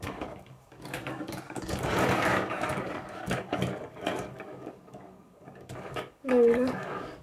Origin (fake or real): fake